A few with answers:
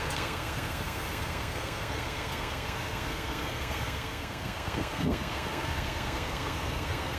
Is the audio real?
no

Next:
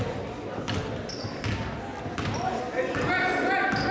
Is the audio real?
yes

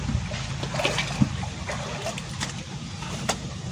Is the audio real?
yes